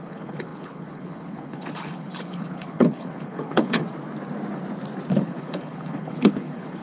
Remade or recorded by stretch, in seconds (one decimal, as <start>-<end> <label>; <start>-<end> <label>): 0.0-3.8 remade; 3.8-5.1 recorded; 5.1-6.8 remade

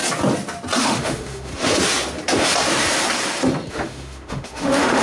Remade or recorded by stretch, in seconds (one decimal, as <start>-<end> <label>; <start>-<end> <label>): 0.0-0.8 recorded; 0.8-1.5 remade; 1.5-3.7 recorded; 3.7-5.0 remade

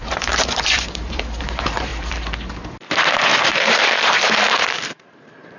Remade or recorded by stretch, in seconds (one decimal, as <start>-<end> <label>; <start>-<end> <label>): 0.0-1.9 remade; 1.9-3.4 recorded; 3.4-5.6 remade

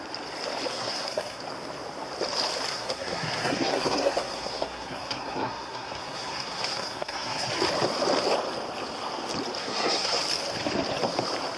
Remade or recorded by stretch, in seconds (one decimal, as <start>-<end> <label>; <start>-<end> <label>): 0.0-0.7 recorded; 0.7-1.4 remade; 1.4-2.7 recorded; 2.7-7.5 remade; 7.5-9.6 recorded; 9.6-10.2 remade; 10.2-11.6 recorded

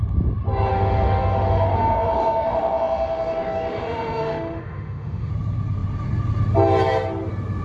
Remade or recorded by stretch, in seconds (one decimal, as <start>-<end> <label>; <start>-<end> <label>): 0.0-0.7 recorded; 0.7-5.3 remade; 5.3-7.6 recorded

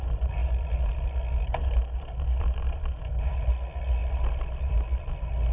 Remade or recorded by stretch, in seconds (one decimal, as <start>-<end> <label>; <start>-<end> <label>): 0.0-5.5 recorded